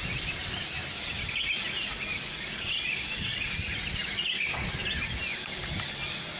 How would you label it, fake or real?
real